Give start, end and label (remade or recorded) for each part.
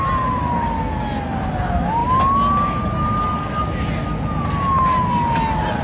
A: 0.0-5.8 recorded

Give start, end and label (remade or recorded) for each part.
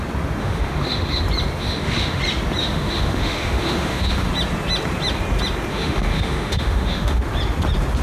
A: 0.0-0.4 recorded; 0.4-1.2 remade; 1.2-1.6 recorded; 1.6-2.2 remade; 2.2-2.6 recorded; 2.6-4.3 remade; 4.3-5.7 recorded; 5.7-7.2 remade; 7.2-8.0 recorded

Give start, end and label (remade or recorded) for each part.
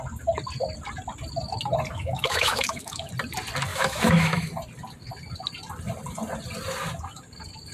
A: 0.0-1.9 recorded; 1.9-3.1 remade; 3.1-3.7 recorded; 3.7-4.5 remade; 4.5-7.7 recorded